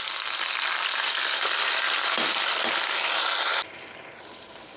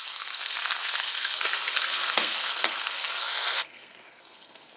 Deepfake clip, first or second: second